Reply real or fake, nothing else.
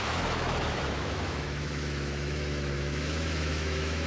fake